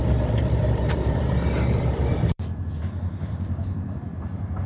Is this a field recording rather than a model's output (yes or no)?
no